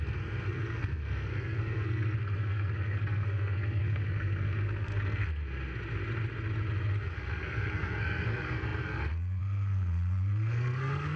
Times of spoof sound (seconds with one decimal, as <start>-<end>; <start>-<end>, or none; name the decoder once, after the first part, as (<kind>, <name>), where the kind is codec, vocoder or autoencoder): 0.0-5.4 (codec, SNAC); 7.0-11.2